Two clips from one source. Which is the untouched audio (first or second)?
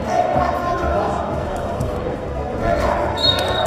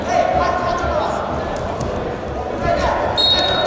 second